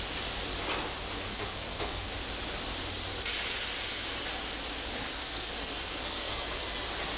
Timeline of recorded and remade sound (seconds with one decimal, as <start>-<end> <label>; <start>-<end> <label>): 0.0-1.3 recorded; 1.3-2.1 remade; 2.1-5.2 recorded; 5.2-6.6 remade; 6.6-7.2 recorded